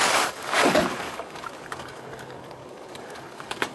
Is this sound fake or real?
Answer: fake